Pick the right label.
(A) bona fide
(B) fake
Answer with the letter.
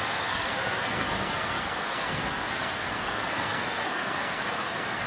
B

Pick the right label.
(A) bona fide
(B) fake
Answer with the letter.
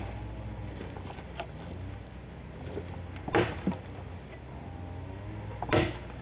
A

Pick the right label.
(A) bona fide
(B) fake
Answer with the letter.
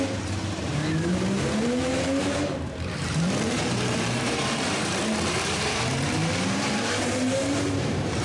B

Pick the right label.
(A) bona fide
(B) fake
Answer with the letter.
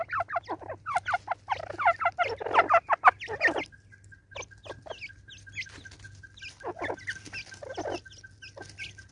A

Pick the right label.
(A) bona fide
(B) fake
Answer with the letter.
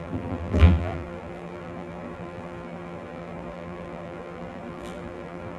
B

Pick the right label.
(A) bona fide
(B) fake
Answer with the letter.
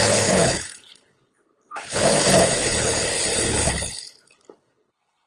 B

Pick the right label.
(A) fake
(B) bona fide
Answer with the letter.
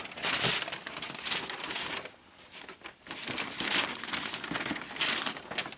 B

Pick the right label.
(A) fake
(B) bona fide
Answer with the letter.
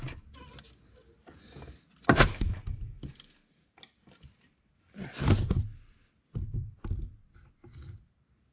B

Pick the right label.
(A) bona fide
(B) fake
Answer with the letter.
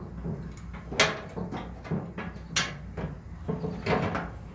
A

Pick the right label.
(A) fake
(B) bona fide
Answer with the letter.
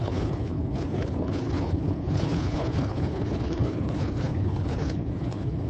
A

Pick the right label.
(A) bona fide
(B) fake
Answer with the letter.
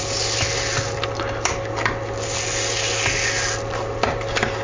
A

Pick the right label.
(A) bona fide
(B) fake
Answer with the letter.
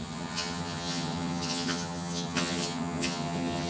B